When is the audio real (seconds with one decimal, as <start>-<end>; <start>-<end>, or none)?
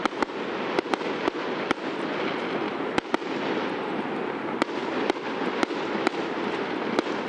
0.0-7.3